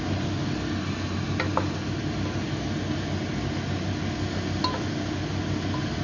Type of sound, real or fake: real